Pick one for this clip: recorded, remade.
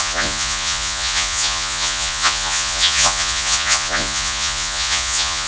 remade